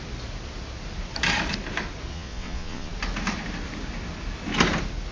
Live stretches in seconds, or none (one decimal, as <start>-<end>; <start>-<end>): 0.0-2.1; 2.9-5.1